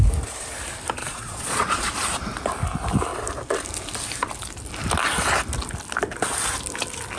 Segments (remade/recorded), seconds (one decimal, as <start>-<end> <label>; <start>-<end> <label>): 0.0-1.0 recorded; 1.0-1.9 remade; 1.9-7.2 recorded